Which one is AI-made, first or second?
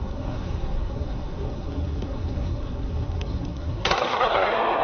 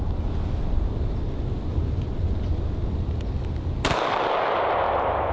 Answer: first